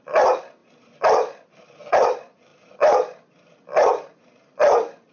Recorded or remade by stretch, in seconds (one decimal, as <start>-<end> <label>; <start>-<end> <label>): 0.0-5.1 recorded